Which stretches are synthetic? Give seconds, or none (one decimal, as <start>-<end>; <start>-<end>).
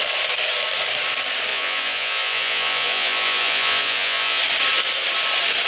1.5-4.4